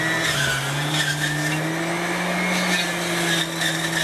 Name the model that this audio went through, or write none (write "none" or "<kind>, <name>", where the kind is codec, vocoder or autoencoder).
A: none